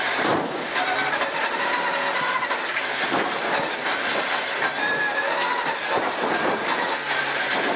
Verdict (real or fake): real